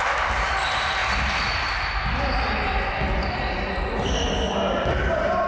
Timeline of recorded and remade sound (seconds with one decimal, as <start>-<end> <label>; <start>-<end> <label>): 0.0-5.5 recorded